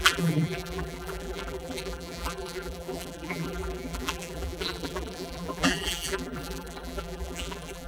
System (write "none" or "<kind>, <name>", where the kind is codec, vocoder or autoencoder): vocoder, BigVGAN v2